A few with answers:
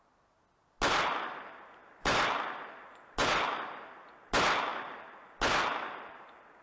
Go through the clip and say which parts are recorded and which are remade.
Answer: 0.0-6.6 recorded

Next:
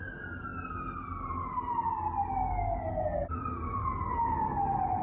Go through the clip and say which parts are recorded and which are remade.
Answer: 0.0-5.0 recorded

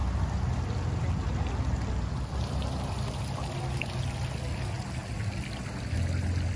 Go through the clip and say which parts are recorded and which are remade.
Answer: 0.0-6.6 recorded

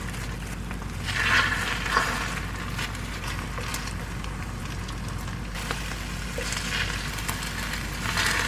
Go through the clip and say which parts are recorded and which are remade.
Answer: 0.0-8.5 recorded

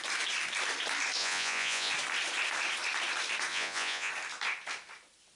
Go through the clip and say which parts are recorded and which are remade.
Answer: 0.0-1.2 recorded; 1.2-1.9 remade; 1.9-3.5 recorded; 3.5-4.1 remade; 4.1-5.4 recorded